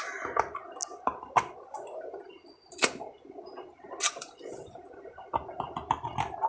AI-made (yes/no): no